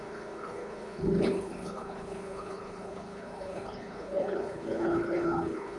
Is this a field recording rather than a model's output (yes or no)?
no